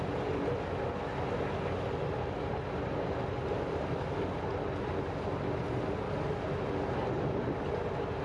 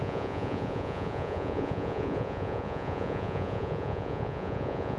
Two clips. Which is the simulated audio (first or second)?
second